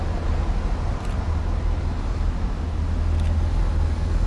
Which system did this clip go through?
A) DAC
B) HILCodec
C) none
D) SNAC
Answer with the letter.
C